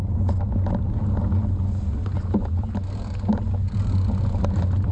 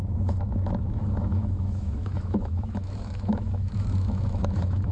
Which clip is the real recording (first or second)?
first